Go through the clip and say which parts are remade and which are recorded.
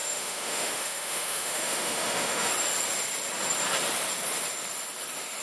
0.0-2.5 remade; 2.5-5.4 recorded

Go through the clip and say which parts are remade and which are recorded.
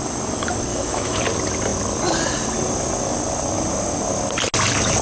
0.0-0.7 recorded; 0.7-1.2 remade; 1.2-5.0 recorded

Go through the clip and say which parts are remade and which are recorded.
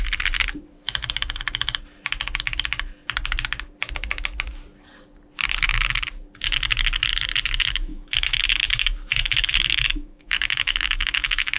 0.0-7.9 recorded; 7.9-8.6 remade; 8.6-9.1 recorded; 9.1-11.6 remade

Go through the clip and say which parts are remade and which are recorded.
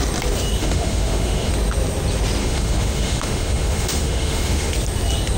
0.0-0.6 recorded; 0.6-1.5 remade; 1.5-2.4 recorded; 2.4-4.7 remade; 4.7-5.4 recorded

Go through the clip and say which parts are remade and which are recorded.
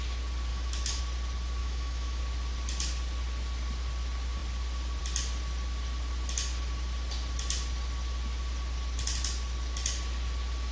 0.0-0.5 recorded; 0.5-1.0 remade; 1.0-1.6 recorded; 1.6-2.2 remade; 2.2-10.7 recorded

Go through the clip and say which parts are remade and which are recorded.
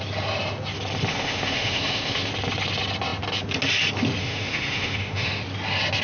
0.0-1.1 recorded; 1.1-2.3 remade; 2.3-4.2 recorded; 4.2-5.4 remade; 5.4-6.0 recorded